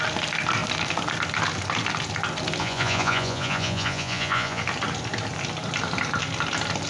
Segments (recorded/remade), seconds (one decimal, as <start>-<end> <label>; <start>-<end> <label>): 0.0-2.6 recorded; 2.6-4.6 remade; 4.6-6.9 recorded